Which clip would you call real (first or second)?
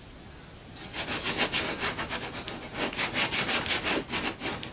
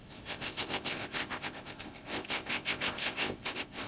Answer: first